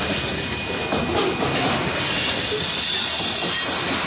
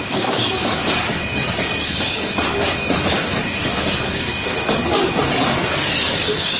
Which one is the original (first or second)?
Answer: first